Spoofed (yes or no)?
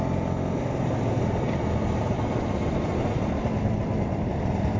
no